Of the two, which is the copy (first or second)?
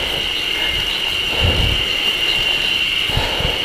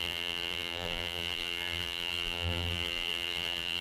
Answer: second